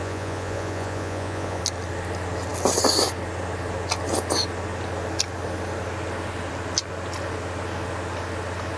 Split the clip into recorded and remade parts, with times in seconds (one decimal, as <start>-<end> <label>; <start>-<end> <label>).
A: 0.0-1.6 remade; 1.6-8.8 recorded